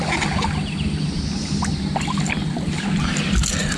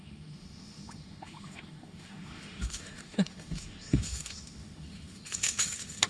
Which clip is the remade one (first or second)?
second